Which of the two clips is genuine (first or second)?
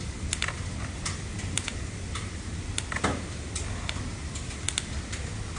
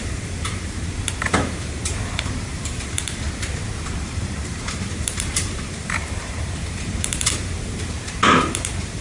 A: first